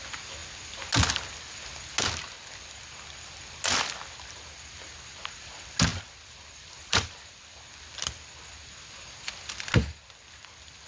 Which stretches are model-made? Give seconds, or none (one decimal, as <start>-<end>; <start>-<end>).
5.9-7.6